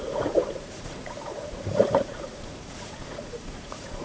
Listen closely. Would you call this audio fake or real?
fake